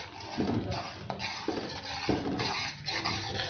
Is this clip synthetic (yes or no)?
no